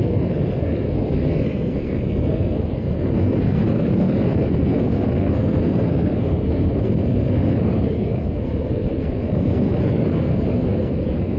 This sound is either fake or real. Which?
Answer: fake